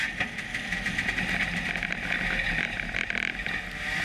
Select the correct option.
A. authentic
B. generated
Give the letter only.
A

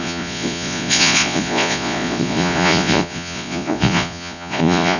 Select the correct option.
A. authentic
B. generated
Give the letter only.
B